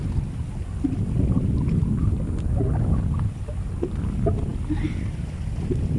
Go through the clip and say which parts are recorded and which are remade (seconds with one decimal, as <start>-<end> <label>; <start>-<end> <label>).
0.0-6.0 recorded